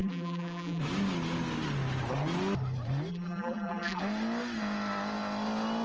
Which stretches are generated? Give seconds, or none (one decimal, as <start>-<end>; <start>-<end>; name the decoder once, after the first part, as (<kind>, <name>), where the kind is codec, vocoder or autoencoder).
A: 0.0-0.8 (vocoder, BigVGAN v2); 3.1-4.0